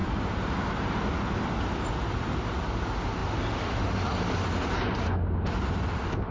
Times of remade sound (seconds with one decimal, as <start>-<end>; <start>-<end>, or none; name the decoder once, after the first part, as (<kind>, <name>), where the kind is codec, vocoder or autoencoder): none